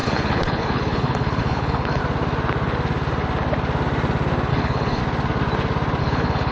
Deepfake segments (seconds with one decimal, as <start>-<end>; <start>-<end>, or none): 0.0-2.0; 4.5-5.0; 6.0-6.5